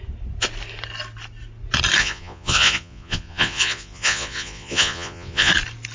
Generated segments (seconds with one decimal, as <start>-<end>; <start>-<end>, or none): 2.0-5.5